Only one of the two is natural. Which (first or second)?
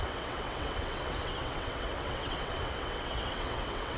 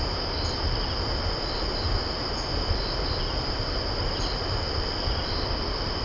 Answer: second